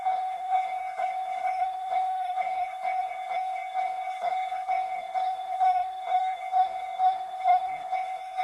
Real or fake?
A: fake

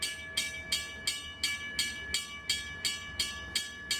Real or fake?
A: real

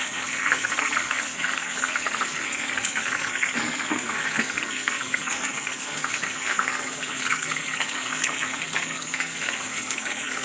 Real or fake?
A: fake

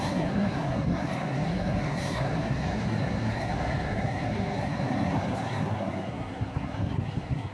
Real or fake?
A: fake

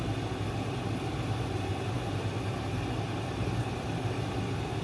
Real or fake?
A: real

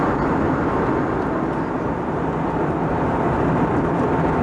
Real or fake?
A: real